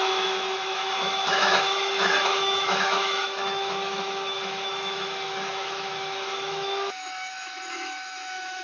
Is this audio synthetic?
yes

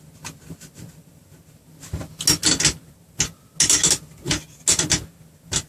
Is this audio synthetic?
no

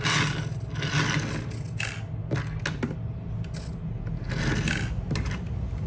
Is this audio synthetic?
no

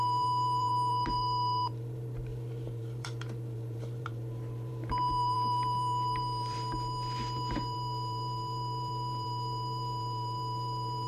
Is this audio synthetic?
yes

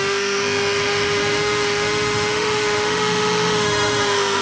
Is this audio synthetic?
yes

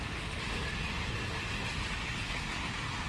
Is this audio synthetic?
no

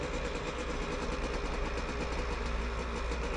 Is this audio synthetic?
no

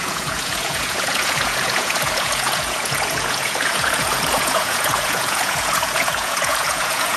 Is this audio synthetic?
yes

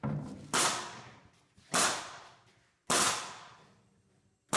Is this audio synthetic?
no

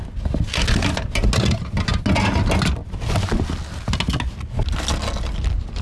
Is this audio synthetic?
no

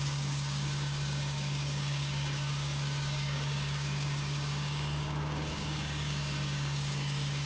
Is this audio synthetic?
yes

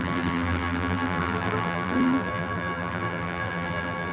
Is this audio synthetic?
yes